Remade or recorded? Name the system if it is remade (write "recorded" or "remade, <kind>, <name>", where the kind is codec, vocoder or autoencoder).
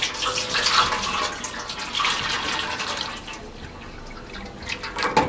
recorded